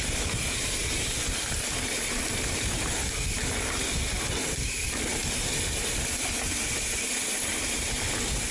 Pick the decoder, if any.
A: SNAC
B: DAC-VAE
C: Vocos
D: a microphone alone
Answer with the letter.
D